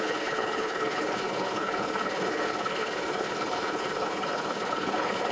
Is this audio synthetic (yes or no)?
yes